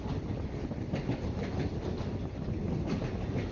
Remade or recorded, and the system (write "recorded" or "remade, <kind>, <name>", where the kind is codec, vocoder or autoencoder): recorded